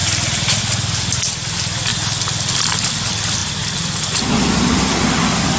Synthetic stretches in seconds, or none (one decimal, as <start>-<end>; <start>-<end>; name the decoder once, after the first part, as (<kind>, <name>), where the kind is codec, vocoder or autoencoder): none